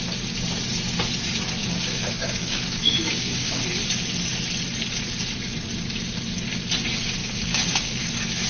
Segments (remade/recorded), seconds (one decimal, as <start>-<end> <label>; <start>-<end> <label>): 0.0-1.6 recorded; 1.6-3.6 remade; 3.6-7.2 recorded; 7.2-8.1 remade; 8.1-8.5 recorded